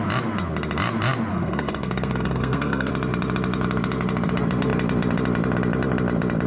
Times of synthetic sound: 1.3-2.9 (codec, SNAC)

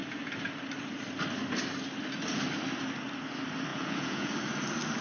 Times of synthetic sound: 3.7-4.3 (vocoder, Vocos)

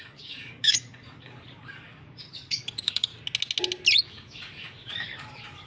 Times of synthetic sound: 0.0-3.1 (codec, DAC); 4.0-5.7

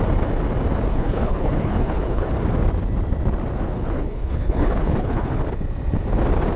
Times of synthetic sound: 0.9-2.3 (codec, HILCodec); 3.7-5.4

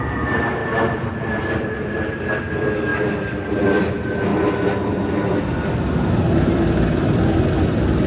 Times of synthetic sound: 0.6-2.4 (vocoder, BigVGAN v2); 2.9-3.8

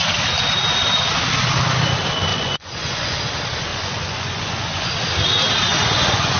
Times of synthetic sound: 2.3-3.2 (vocoder, Vocos); 3.7-4.9; 5.7-6.4

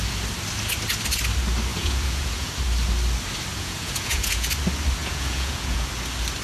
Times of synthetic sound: 1.7-2.5 (vocoder, Vocos); 3.5-4.5; 5.0-5.9

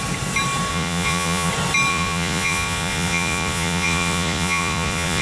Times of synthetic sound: 0.7-1.5 (vocoder, Vocos); 1.9-5.2